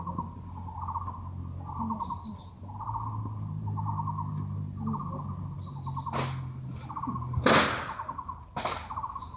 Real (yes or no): yes